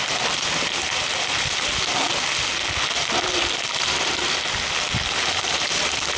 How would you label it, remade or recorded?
recorded